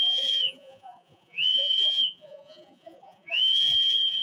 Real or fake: fake